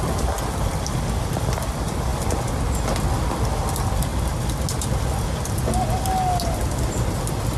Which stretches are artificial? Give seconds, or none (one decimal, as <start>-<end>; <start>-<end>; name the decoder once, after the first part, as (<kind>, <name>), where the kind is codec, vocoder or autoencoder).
none